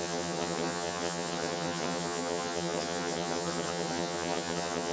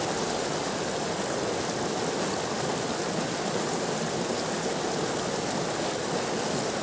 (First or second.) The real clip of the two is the second